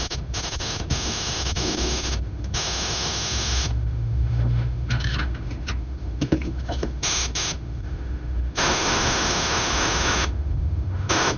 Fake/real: fake